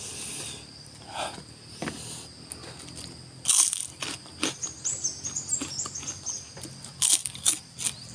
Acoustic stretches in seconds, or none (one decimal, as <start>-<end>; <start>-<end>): 0.0-8.1